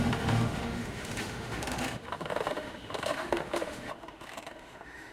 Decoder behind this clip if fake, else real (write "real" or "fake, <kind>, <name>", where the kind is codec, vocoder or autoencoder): fake, autoencoder, DAC-VAE